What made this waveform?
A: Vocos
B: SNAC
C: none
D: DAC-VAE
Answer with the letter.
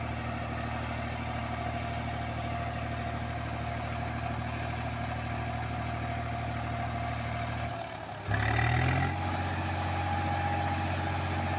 C